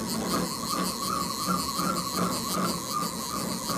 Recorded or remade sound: recorded